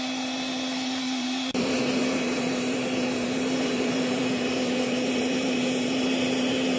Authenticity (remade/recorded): remade